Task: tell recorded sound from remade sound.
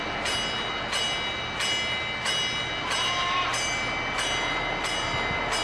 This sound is recorded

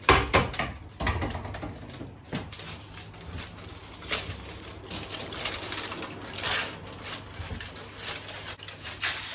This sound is recorded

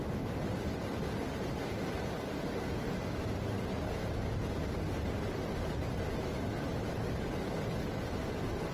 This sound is recorded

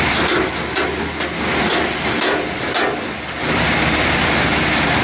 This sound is recorded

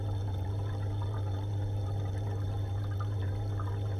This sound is remade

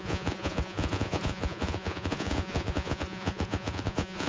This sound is remade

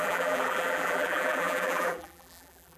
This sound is remade